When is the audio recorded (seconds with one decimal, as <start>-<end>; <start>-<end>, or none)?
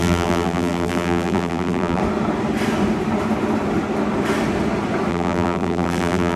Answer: 2.0-5.1